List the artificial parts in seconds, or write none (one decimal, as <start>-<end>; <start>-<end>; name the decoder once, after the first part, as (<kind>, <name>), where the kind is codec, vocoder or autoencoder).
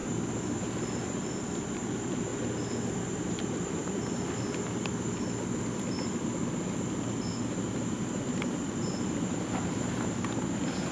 1.6-2.3 (vocoder, BigVGAN v2); 2.9-3.8; 8.2-10.9